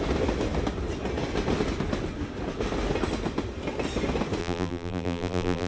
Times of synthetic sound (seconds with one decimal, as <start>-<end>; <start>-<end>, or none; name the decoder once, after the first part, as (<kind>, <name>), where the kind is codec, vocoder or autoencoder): 4.4-5.7 (vocoder, BigVGAN v2)